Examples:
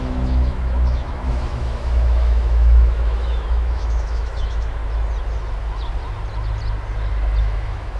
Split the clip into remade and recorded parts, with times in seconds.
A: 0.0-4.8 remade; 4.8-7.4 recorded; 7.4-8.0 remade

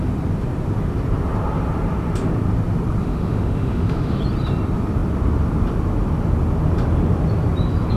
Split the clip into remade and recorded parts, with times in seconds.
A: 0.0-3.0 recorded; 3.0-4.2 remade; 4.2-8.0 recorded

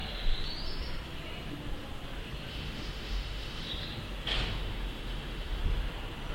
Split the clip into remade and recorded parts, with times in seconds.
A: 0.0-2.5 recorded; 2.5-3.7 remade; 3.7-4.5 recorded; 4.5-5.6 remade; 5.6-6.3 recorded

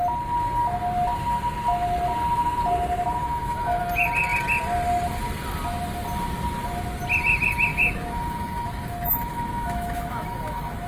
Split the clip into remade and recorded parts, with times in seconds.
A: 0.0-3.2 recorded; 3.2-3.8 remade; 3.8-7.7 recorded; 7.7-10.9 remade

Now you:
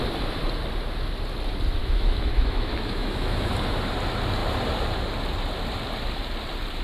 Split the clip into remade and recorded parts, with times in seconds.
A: 0.0-1.8 recorded; 1.8-3.5 remade; 3.5-6.8 recorded